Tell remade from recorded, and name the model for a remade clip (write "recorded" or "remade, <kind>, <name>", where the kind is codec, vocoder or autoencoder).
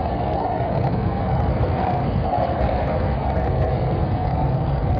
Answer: remade, codec, SNAC